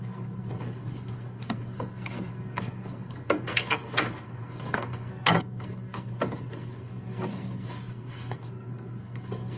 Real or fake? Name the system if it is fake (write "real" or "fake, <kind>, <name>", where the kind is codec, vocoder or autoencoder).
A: fake, codec, SNAC